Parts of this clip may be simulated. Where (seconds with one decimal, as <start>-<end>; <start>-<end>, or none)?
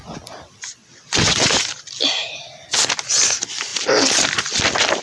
0.8-1.5